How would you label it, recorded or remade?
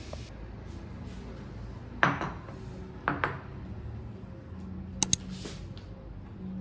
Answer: recorded